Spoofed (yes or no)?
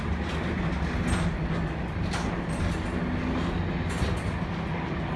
no